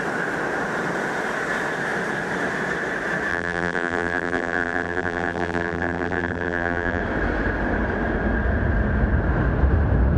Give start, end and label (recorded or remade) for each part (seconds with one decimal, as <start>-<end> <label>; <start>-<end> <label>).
0.0-3.3 recorded; 3.3-7.0 remade; 7.0-10.2 recorded